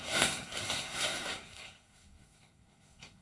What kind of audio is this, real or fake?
fake